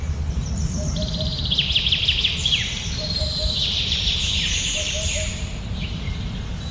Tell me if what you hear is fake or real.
fake